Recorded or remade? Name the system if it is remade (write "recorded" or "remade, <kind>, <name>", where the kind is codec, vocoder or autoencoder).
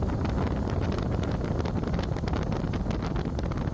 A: recorded